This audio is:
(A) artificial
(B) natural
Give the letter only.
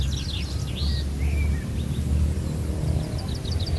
B